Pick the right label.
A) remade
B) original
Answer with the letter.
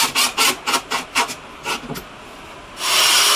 B